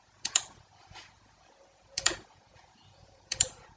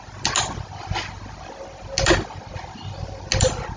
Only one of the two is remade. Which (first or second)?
first